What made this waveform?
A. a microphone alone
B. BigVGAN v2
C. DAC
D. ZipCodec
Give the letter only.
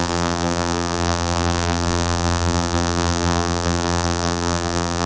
B